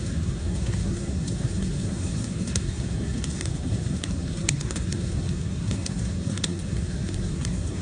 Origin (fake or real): fake